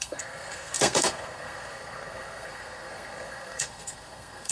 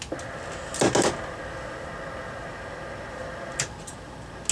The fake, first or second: first